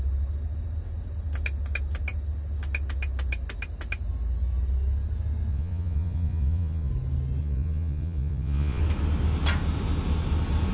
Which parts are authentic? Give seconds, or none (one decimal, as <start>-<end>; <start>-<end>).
0.0-5.5; 6.9-7.4; 8.8-10.7